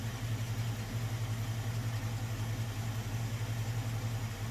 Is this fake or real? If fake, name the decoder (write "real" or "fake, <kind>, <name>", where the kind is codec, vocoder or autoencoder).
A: real